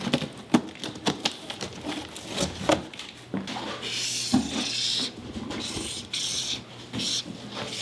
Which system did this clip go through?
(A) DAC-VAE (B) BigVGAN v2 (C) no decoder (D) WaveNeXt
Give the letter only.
C